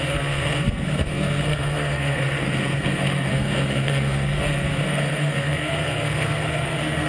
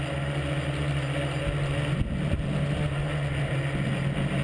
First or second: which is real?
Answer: second